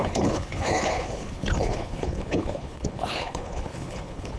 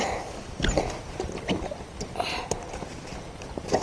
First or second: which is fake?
first